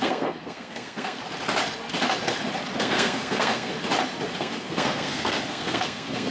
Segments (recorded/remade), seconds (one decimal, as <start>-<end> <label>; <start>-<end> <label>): 0.0-1.2 remade; 1.2-2.8 recorded; 2.8-3.7 remade; 3.7-4.4 recorded; 4.4-6.3 remade

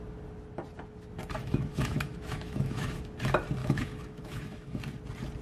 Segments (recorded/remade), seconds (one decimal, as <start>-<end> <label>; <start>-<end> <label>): 0.0-1.4 recorded; 1.4-3.0 remade; 3.0-3.6 recorded; 3.6-4.8 remade; 4.8-5.4 recorded

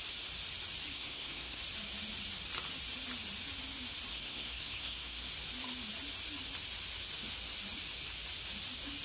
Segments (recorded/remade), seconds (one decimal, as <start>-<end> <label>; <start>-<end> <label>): 0.0-0.9 recorded; 0.9-1.6 remade; 1.6-4.1 recorded; 4.1-5.3 remade; 5.3-9.0 recorded

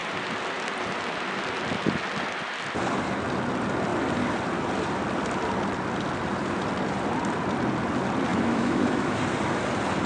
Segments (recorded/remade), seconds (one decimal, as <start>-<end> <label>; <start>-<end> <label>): 0.0-8.3 recorded; 8.3-9.2 remade; 9.2-10.1 recorded

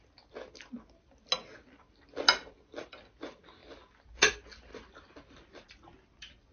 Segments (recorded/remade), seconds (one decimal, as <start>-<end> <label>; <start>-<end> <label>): 0.0-6.5 recorded

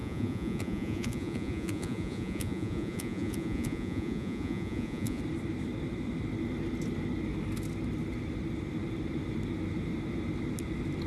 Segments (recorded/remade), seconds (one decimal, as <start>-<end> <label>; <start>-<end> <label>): 0.0-5.2 remade; 5.2-11.1 recorded

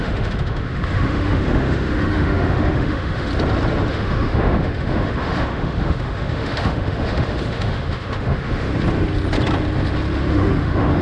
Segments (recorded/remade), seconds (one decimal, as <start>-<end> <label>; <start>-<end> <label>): 0.0-3.3 remade; 3.3-3.9 recorded; 3.9-8.7 remade; 8.7-10.3 recorded; 10.3-11.0 remade